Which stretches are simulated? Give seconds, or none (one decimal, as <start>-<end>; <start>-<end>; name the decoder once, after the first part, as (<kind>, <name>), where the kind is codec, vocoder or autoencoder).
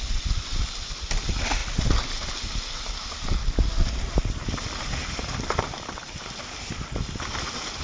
none